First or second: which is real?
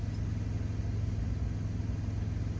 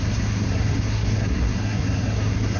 first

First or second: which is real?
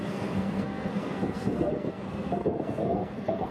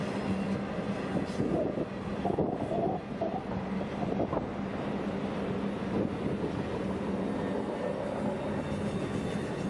second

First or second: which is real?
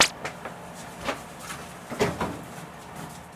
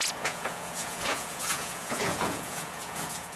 first